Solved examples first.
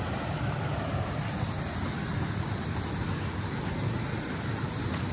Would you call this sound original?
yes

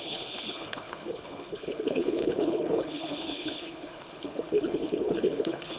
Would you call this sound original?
no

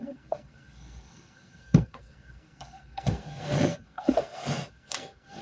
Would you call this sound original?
no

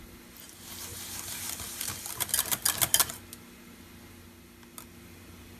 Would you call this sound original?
yes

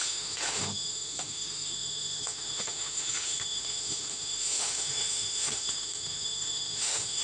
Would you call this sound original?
no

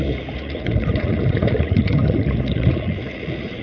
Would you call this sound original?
no